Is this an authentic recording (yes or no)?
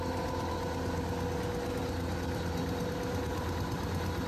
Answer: yes